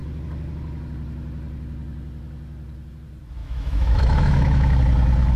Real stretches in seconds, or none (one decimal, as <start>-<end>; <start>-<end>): 0.0-3.4; 4.8-5.4

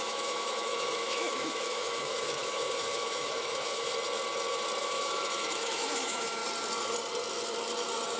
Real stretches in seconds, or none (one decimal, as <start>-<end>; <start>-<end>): 3.9-4.8; 6.4-8.2

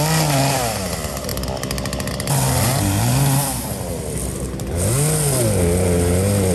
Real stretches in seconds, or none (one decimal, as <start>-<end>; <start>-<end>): 0.0-6.5

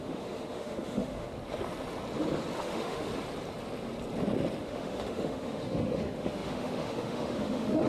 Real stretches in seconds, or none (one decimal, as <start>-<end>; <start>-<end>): 1.3-2.6; 3.1-4.6

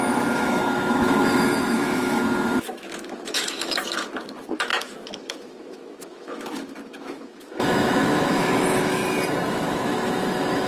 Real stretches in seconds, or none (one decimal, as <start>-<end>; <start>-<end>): 9.0-9.5